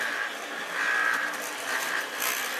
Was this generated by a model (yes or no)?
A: no